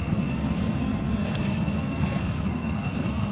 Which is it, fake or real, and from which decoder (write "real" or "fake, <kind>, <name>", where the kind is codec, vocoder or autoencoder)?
fake, codec, SNAC